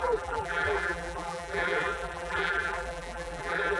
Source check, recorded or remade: remade